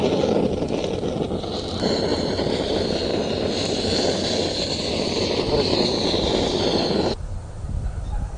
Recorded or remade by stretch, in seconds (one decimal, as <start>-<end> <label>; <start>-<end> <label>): 0.0-8.4 recorded